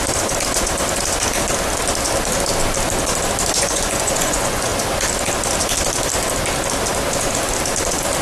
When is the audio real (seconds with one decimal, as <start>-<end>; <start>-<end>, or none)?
0.0-3.6; 4.7-8.2